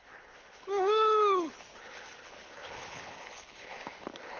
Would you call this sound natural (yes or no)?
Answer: no